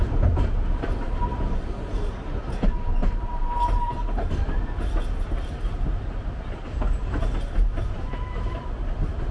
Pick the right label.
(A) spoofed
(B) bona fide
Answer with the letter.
B